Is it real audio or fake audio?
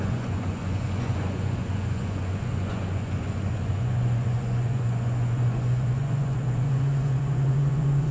fake